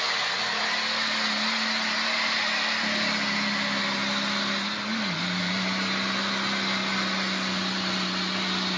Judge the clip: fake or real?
real